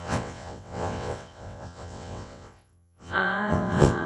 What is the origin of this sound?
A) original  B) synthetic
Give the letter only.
B